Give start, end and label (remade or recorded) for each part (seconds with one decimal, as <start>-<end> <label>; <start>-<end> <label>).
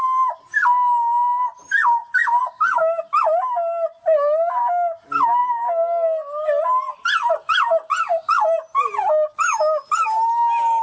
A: 0.0-10.8 recorded